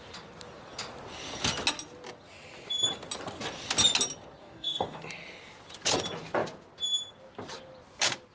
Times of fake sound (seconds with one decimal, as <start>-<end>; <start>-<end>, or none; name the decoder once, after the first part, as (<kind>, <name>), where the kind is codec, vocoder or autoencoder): 4.4-5.0 (codec, DAC)